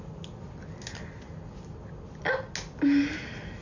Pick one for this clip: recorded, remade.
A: recorded